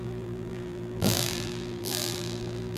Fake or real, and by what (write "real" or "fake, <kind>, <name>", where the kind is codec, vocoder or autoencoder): fake, vocoder, BigVGAN v2